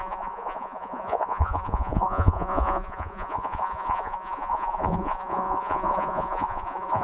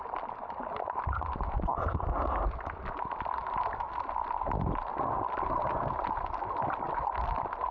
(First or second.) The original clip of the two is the second